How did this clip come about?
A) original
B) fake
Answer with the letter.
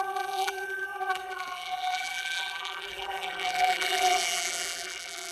B